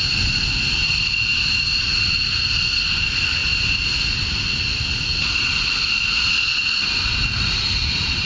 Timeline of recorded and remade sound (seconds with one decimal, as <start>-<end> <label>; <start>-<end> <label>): 0.0-8.3 recorded